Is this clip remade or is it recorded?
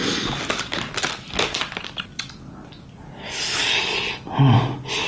recorded